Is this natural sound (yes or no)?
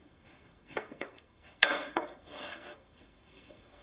no